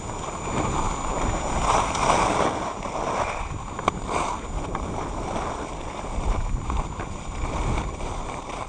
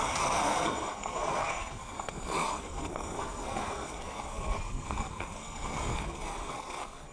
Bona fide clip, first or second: first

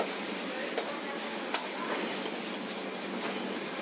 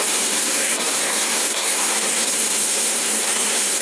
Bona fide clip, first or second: first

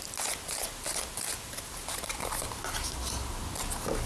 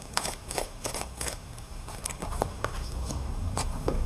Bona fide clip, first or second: first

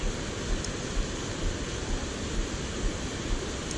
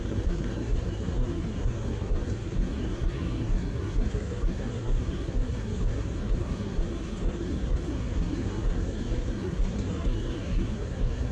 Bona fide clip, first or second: first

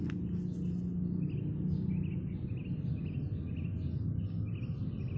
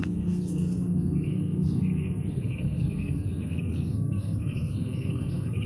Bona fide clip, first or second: first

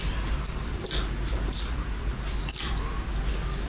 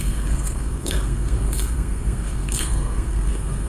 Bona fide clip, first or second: first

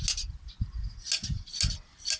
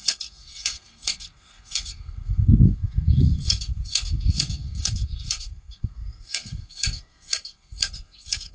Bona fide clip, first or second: first